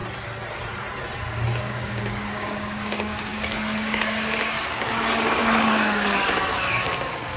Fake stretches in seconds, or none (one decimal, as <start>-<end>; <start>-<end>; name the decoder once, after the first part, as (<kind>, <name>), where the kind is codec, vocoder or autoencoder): 1.6-7.4 (codec, DAC)